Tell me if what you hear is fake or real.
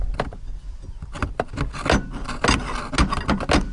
real